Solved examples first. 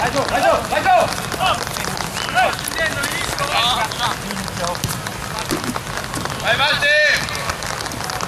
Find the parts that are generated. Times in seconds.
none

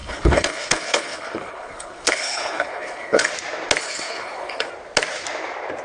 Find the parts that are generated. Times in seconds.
0.0-3.3 (codec, HILCodec); 3.8-4.7

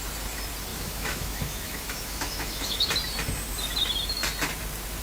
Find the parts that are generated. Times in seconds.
0.7-2.9 (autoencoder, DAC-VAE)

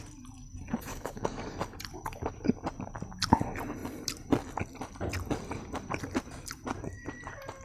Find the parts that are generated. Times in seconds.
0.9-1.5 (codec, DAC)

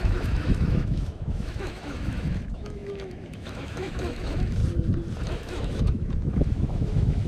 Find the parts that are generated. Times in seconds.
0.0-4.6 (autoencoder, DAC-VAE); 5.3-7.3

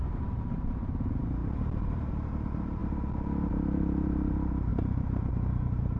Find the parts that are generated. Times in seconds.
0.0-2.8 (vocoder, BigVGAN v2); 3.5-6.0